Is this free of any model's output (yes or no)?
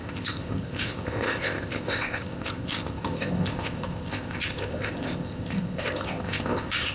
no